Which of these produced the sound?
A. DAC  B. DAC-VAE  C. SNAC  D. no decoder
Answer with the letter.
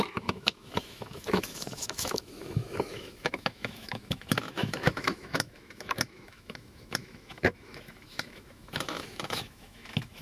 B